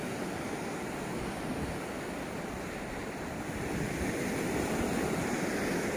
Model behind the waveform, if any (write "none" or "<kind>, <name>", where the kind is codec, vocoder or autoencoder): vocoder, BigVGAN v2